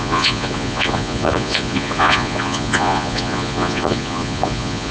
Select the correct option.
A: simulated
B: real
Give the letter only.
A